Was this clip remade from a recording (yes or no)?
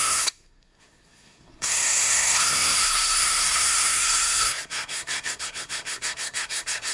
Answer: yes